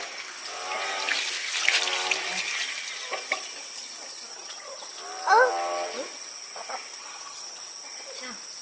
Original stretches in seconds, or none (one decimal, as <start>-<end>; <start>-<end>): 0.0-4.3; 4.8-7.0; 7.6-8.6